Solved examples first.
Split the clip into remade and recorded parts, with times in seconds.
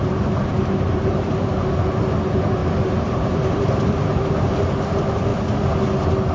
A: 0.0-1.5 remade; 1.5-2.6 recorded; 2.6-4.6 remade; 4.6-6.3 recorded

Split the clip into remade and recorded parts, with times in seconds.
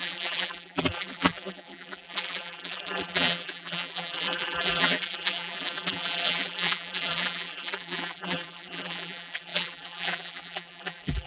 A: 0.0-11.3 remade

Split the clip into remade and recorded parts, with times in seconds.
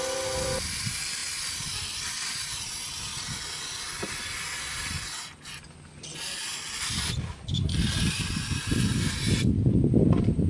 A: 0.0-1.2 remade; 1.2-1.7 recorded; 1.7-3.9 remade; 3.9-6.5 recorded; 6.5-10.5 remade